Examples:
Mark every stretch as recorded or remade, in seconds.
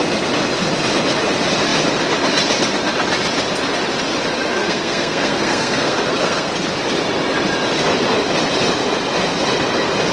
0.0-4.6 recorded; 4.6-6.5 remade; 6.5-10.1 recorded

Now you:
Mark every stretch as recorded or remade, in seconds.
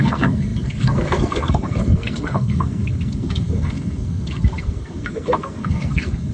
0.0-6.3 remade